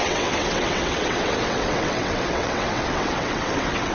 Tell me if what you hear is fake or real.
fake